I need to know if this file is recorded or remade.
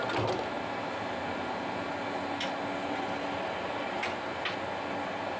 recorded